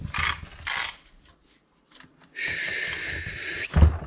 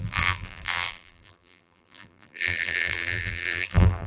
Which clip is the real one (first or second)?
first